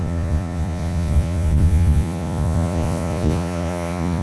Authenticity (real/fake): fake